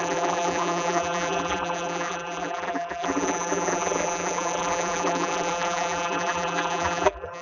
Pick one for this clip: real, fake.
fake